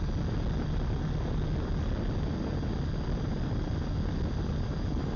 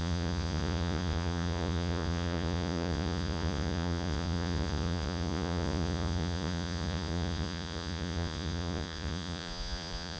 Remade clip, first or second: second